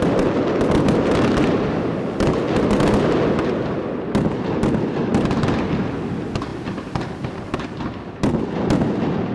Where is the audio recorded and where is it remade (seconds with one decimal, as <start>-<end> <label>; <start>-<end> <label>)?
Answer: 0.0-9.3 recorded